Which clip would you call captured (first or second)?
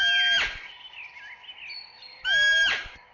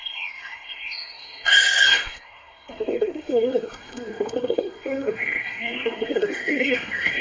first